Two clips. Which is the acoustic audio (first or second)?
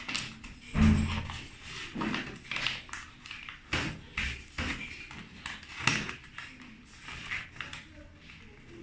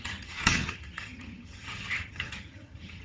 first